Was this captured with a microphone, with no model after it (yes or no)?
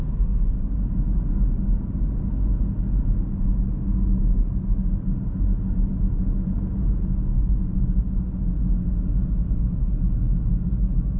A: yes